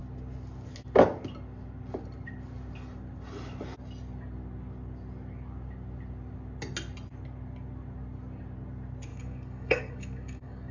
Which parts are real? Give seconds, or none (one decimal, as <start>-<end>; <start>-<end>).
0.0-9.1